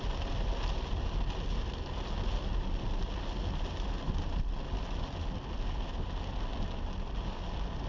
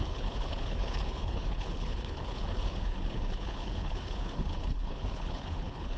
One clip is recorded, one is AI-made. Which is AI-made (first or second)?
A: second